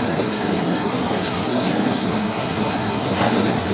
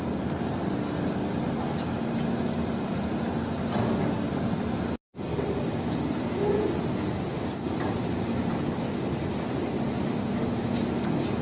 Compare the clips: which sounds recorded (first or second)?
second